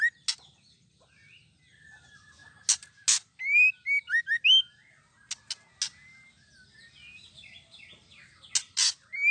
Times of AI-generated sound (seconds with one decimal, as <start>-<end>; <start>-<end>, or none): none